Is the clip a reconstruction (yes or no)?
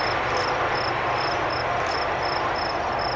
no